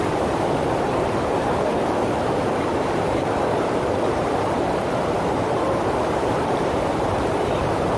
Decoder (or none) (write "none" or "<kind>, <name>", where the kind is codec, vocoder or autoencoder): vocoder, BigVGAN v2